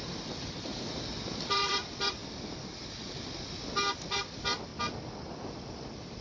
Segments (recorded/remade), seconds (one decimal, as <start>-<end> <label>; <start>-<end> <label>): 0.0-0.7 remade; 0.7-1.4 recorded; 1.4-2.2 remade; 2.2-4.1 recorded; 4.1-4.7 remade; 4.7-6.2 recorded